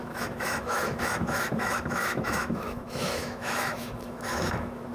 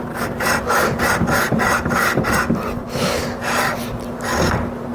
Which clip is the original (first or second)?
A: second